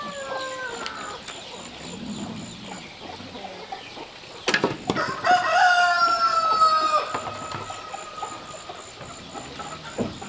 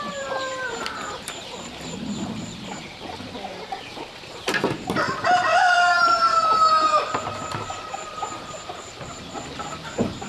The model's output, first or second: second